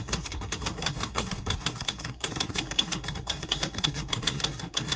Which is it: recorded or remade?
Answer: remade